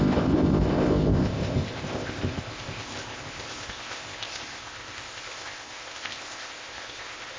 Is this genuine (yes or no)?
no